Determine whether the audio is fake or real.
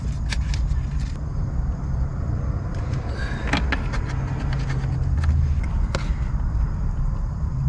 real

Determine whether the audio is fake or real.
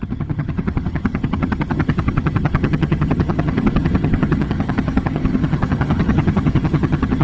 fake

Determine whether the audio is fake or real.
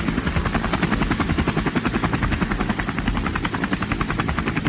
real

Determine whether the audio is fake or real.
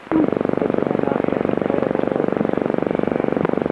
real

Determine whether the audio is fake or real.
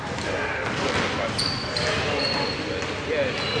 real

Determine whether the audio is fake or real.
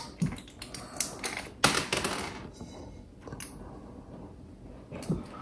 real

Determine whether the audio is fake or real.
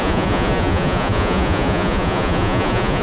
fake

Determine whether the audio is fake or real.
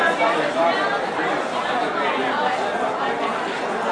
real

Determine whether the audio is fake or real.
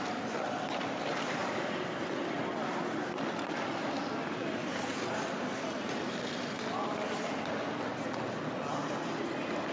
real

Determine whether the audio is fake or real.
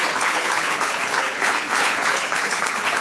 fake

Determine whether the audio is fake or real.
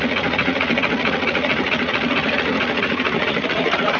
fake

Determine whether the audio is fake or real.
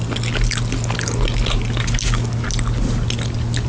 real